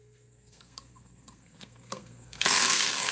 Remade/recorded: remade